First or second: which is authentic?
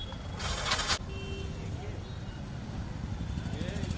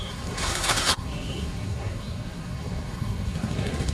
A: first